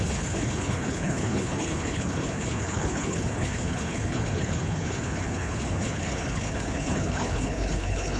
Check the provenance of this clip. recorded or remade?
remade